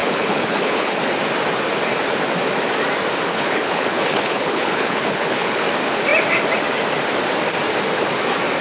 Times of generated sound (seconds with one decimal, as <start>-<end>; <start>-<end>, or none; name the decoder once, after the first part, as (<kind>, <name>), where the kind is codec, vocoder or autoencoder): 0.0-1.0 (codec, HILCodec); 3.3-5.6